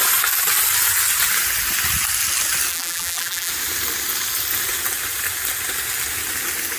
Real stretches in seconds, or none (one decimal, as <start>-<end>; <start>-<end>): 0.0-2.7; 3.5-6.8